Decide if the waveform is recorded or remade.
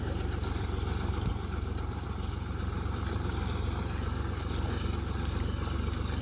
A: recorded